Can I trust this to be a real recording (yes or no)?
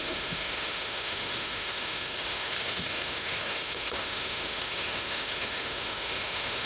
no